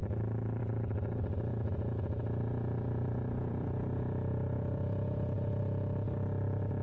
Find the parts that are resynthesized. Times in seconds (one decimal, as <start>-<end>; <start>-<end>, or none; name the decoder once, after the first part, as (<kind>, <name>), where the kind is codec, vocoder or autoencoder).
1.5-5.6 (vocoder, Vocos)